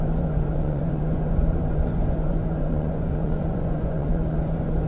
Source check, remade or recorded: remade